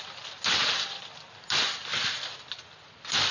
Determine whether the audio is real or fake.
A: real